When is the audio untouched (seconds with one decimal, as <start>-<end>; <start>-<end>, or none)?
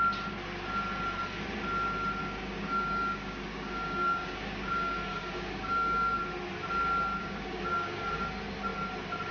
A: 0.0-2.2; 6.2-7.2; 8.1-9.3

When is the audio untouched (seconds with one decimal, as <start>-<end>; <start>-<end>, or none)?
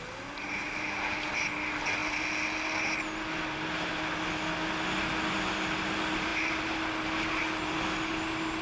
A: 0.0-8.6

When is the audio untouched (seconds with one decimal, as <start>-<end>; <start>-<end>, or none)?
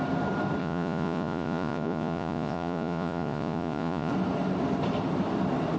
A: 0.0-0.6; 4.1-5.8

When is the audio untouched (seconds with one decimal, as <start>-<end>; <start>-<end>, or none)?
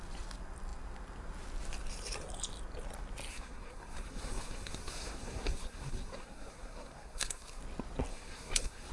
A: 0.0-3.3; 7.6-8.1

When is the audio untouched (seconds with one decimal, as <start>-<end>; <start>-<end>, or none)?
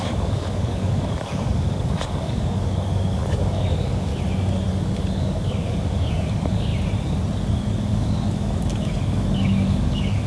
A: 4.1-4.7; 6.7-7.5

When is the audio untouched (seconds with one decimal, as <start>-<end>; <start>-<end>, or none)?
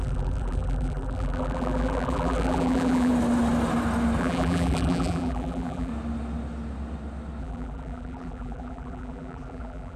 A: 3.1-4.2; 5.9-7.4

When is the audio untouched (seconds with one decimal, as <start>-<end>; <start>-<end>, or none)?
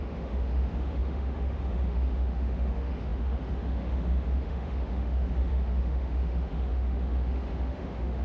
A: none